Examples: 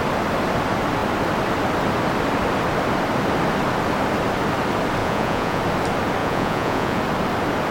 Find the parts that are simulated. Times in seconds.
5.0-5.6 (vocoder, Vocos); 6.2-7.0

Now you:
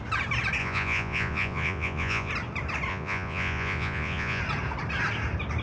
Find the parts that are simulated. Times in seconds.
0.6-2.3 (vocoder, Vocos); 2.9-4.4

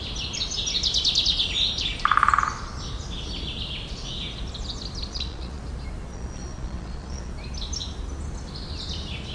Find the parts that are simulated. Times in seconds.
5.1-5.6 (vocoder, Vocos); 6.1-7.3